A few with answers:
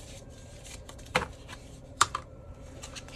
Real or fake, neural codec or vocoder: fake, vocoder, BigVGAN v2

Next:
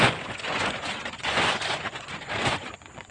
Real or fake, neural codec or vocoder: fake, vocoder, Vocos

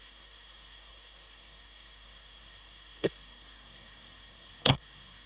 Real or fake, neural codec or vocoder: fake, codec, SNAC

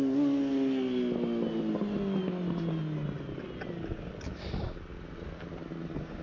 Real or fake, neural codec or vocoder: real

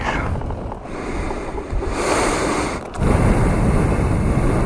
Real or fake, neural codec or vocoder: real